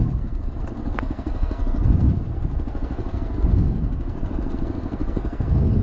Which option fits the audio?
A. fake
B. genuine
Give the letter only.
A